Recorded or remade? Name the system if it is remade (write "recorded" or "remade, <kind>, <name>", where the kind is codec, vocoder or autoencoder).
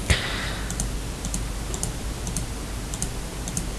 recorded